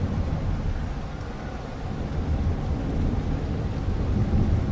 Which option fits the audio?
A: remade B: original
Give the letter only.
B